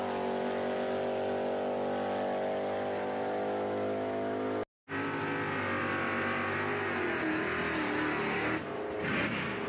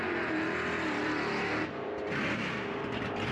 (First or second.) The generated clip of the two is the second